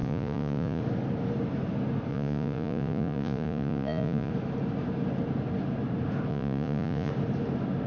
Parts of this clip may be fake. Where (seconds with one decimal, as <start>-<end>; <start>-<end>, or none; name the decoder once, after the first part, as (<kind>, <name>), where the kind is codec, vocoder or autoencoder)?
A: 0.0-0.8 (vocoder, Vocos); 2.1-4.3; 6.3-7.1